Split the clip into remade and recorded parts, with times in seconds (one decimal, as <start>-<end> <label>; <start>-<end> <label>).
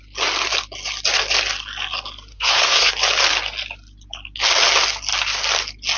0.0-2.3 recorded; 2.3-2.9 remade; 2.9-6.0 recorded